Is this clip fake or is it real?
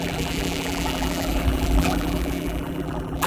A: fake